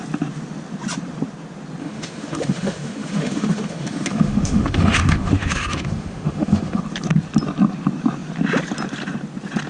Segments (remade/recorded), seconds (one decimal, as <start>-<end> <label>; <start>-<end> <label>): 0.0-1.8 recorded; 1.8-6.8 remade; 6.8-9.7 recorded